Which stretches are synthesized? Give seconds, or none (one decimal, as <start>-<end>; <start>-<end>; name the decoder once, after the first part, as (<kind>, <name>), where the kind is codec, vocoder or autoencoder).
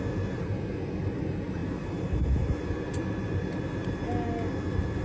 1.6-4.1 (vocoder, BigVGAN v2)